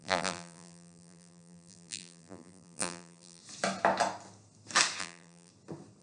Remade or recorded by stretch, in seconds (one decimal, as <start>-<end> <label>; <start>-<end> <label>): 0.0-3.4 remade; 3.4-5.0 recorded; 5.0-5.5 remade; 5.5-6.0 recorded